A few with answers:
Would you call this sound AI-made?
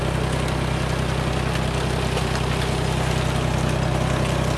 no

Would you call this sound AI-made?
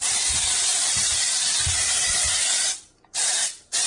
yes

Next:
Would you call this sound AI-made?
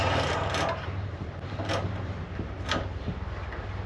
yes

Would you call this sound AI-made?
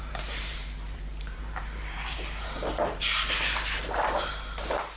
yes